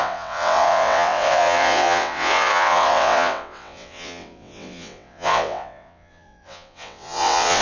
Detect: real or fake fake